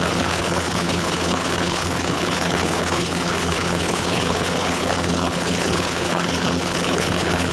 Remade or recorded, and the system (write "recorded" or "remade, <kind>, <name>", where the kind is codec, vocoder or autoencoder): remade, codec, HILCodec